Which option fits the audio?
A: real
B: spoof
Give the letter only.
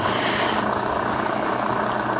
A